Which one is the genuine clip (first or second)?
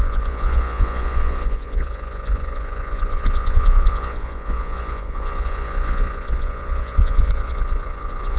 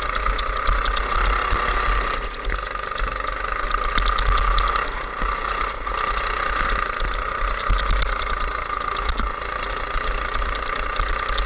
second